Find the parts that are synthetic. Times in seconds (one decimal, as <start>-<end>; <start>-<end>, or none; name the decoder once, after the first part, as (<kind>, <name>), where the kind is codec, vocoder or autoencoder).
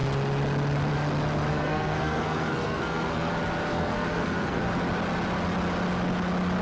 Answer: 1.5-3.3 (codec, SNAC); 3.7-4.6